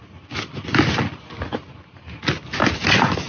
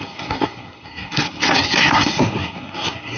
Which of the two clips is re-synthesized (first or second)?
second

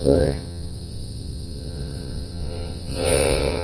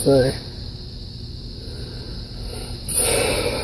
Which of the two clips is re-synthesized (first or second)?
first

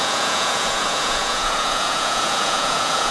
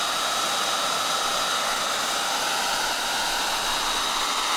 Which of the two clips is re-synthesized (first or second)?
first